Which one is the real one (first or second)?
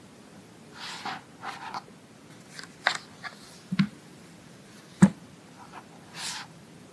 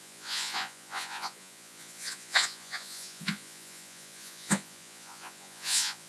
first